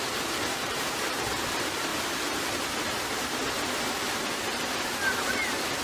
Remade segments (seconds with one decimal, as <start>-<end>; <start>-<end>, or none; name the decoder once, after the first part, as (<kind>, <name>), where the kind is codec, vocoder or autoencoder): 0.0-1.9 (vocoder, BigVGAN v2); 5.3-5.8